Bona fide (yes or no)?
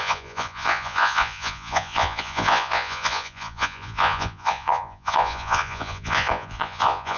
no